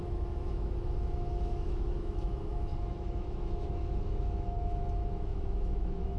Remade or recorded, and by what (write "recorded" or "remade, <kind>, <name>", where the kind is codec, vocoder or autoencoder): remade, autoencoder, DAC-VAE